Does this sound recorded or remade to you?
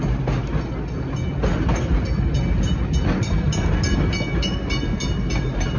recorded